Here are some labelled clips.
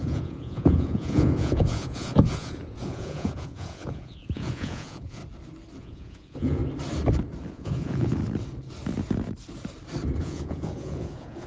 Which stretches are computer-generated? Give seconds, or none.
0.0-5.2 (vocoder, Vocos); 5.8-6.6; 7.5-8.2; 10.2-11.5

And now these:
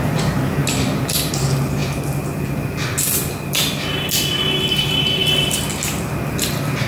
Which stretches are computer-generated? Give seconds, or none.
none